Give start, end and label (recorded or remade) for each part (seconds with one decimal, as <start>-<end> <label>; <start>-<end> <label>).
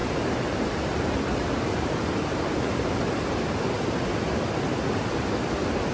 0.0-3.5 remade; 3.5-5.9 recorded